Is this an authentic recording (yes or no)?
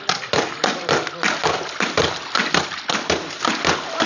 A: yes